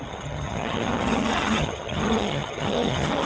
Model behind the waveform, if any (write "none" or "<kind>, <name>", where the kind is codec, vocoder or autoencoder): vocoder, HiFi-GAN